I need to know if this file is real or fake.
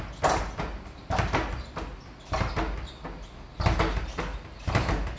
real